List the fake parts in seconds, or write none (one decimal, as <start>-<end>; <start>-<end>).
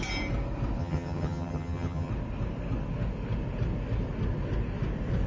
0.8-2.1